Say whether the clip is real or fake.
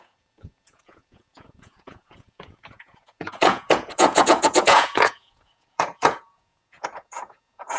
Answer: fake